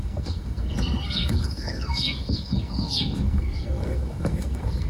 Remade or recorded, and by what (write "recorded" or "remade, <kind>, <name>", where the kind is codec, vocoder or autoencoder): remade, codec, SNAC